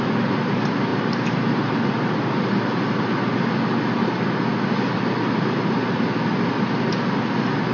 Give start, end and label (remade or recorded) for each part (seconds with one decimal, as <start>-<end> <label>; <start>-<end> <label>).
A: 0.0-0.9 recorded; 0.9-3.0 remade; 3.0-7.7 recorded